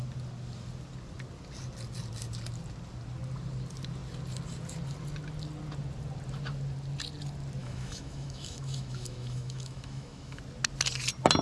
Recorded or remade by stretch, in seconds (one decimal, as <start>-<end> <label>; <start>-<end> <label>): 0.0-7.6 recorded; 7.6-10.4 remade; 10.4-11.4 recorded